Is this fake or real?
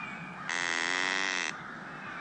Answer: real